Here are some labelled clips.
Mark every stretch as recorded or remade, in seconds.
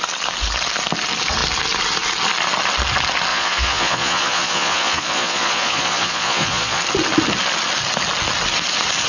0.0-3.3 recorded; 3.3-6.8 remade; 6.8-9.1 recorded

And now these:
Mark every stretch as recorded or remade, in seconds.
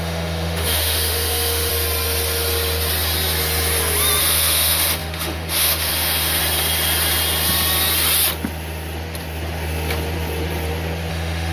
0.0-1.7 remade; 1.7-4.2 recorded; 4.2-6.4 remade; 6.4-11.1 recorded; 11.1-11.5 remade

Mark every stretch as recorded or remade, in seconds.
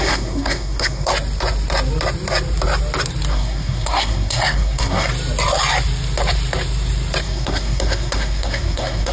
0.0-1.1 remade; 1.1-3.3 recorded; 3.3-5.1 remade; 5.1-7.2 recorded; 7.2-9.1 remade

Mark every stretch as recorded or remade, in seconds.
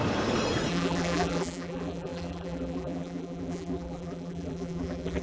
0.0-0.7 recorded; 0.7-5.2 remade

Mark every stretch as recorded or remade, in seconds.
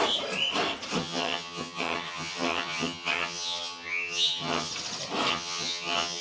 0.0-1.0 recorded; 1.0-4.7 remade; 4.7-5.3 recorded; 5.3-6.2 remade